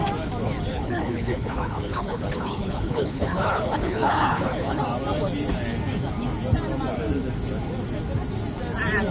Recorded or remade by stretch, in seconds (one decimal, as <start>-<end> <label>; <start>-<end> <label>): 0.0-0.7 recorded; 0.7-4.8 remade; 4.8-9.1 recorded